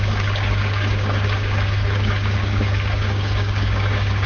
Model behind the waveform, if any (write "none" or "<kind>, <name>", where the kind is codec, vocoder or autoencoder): codec, DAC